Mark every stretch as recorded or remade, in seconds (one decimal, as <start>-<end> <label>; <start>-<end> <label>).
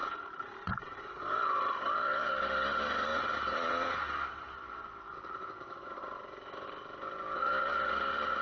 0.0-2.3 remade; 2.3-4.3 recorded; 4.3-6.2 remade; 6.2-8.4 recorded